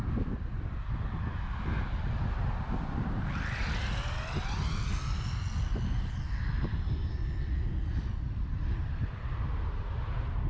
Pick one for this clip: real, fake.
real